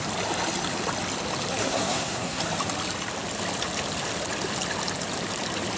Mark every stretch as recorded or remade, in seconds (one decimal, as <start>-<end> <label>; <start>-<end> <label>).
0.0-1.6 recorded; 1.6-2.4 remade; 2.4-5.8 recorded